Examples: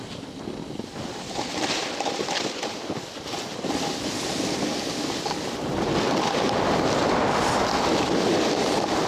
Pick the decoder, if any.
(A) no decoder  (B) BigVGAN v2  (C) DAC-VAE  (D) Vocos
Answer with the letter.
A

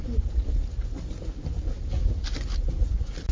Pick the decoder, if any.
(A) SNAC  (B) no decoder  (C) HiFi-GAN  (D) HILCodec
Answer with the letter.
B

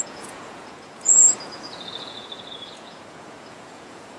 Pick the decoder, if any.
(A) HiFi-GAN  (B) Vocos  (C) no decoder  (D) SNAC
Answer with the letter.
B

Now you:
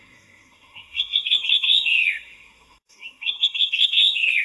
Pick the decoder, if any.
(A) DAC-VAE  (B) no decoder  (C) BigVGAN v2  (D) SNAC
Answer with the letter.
D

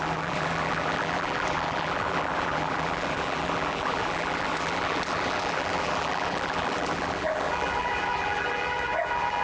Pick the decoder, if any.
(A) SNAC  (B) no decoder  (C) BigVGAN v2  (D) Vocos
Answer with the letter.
C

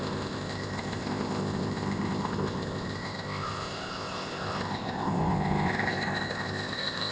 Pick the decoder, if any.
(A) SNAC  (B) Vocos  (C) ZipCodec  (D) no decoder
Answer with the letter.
C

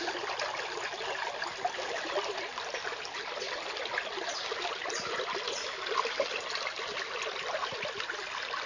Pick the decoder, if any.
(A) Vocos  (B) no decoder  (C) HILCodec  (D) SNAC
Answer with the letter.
B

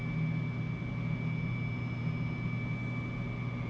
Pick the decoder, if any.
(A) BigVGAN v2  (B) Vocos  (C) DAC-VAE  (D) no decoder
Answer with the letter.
D